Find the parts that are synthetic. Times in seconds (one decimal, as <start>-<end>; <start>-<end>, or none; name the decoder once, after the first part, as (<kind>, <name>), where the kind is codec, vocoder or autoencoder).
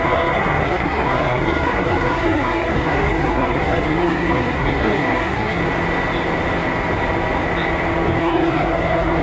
0.0-5.6 (codec, SNAC); 8.2-9.2